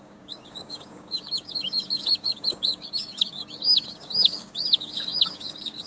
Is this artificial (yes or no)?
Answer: yes